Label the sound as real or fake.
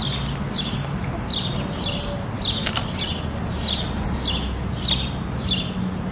real